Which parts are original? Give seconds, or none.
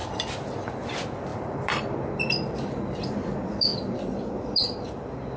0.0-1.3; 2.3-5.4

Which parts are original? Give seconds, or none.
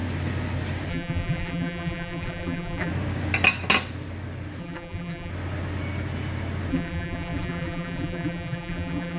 0.0-0.9; 2.9-4.6; 5.3-6.7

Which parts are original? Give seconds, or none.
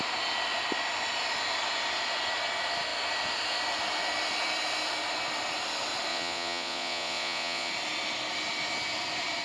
0.0-6.1; 7.7-9.4